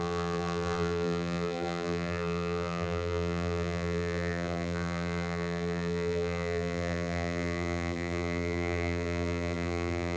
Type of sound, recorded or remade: remade